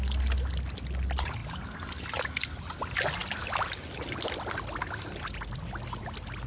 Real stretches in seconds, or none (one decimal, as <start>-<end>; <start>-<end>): 0.0-6.5